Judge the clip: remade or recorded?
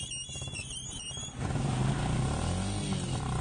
recorded